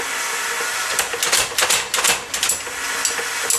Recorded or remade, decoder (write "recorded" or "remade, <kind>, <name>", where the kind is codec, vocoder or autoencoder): recorded